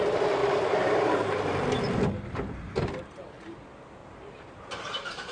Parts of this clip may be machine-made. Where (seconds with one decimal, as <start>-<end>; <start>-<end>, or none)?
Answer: 0.4-3.6; 4.0-5.3